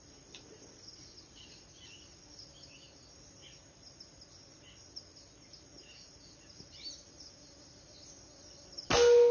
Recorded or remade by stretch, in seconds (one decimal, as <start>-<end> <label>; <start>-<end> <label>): 0.0-9.3 recorded